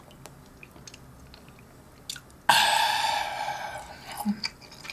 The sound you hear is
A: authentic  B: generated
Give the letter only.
A